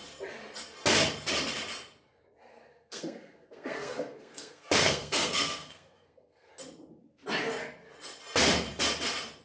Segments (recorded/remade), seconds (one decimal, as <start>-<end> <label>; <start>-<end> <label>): 0.0-2.5 recorded; 2.5-6.5 remade; 6.5-9.4 recorded